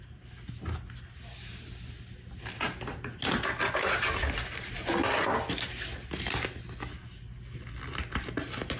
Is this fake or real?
real